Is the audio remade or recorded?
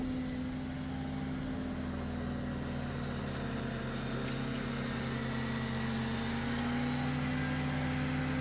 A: recorded